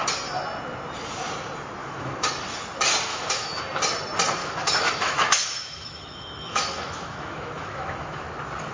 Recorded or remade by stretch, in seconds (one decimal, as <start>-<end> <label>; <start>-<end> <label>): 0.0-1.8 recorded; 1.8-2.3 remade; 2.3-3.1 recorded; 3.1-3.6 remade; 3.6-4.4 recorded; 4.4-8.2 remade; 8.2-8.7 recorded

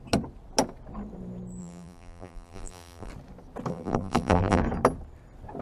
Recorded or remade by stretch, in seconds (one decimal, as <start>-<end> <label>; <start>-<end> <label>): 0.0-1.6 recorded; 1.6-3.1 remade; 3.1-3.7 recorded; 3.7-4.6 remade; 4.6-5.6 recorded

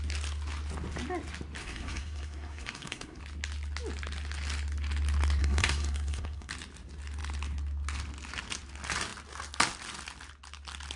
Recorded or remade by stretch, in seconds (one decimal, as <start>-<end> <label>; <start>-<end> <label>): 0.0-1.6 recorded; 1.6-3.2 remade; 3.2-5.4 recorded; 5.4-6.5 remade; 6.5-11.0 recorded

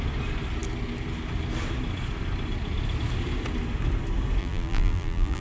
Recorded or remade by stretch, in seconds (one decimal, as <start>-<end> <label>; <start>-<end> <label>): 0.0-4.4 recorded; 4.4-5.4 remade

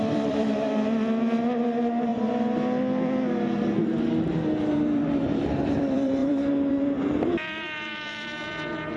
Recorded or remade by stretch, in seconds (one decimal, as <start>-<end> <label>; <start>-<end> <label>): 0.0-2.1 remade; 2.1-4.6 recorded; 4.6-9.0 remade